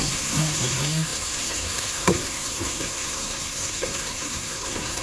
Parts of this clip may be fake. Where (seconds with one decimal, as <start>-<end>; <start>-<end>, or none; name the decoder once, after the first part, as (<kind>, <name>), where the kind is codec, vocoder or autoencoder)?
0.0-5.0 (codec, SNAC)